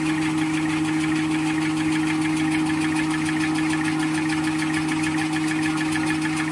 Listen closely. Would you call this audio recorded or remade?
recorded